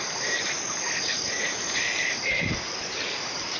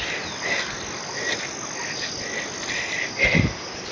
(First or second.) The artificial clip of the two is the first